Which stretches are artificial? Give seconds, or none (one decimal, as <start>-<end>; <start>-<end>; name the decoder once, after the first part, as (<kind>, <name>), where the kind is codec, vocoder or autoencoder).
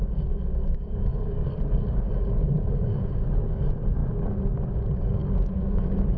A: 0.0-6.2 (codec, DAC)